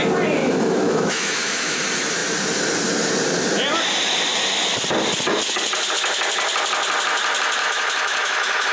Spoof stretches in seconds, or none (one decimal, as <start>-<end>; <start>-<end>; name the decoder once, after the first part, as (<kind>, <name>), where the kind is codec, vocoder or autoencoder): 0.4-1.8 (autoencoder, DAC-VAE); 7.6-8.7